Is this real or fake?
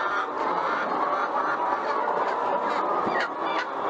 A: fake